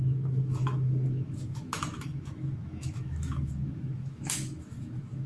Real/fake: fake